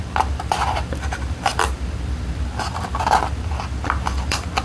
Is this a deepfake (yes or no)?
yes